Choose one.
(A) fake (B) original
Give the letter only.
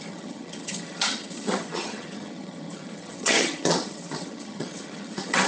A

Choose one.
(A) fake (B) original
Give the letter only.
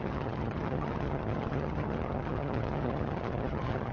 A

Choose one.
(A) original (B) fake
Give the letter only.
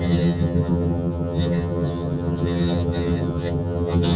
B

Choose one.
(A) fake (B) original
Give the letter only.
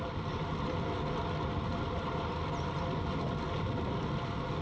B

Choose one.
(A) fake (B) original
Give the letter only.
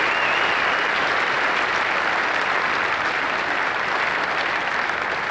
B